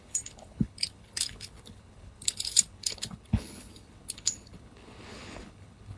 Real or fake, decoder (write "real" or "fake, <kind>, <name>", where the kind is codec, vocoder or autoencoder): fake, codec, HILCodec